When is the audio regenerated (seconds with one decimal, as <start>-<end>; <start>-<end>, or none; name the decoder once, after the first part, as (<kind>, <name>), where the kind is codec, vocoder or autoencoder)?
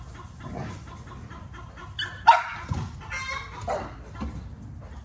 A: none